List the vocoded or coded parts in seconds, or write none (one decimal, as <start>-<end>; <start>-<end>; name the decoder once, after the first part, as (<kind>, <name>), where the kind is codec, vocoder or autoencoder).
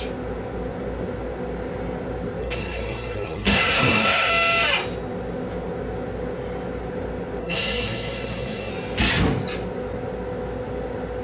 2.4-4.3 (codec, SNAC); 7.4-8.7